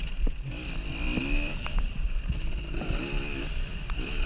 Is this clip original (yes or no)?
yes